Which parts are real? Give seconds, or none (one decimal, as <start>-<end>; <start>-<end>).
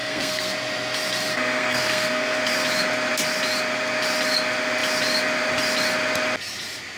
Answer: 0.5-1.3; 2.4-7.0